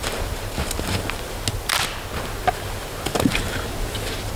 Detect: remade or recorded recorded